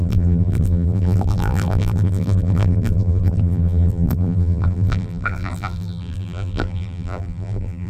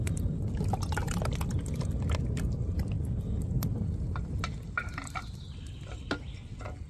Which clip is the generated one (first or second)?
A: first